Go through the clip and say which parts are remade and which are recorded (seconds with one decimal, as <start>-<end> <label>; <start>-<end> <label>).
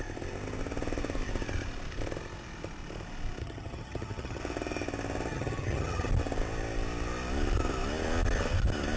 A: 0.0-3.4 recorded; 3.4-4.4 remade; 4.4-5.3 recorded; 5.3-6.1 remade; 6.1-9.0 recorded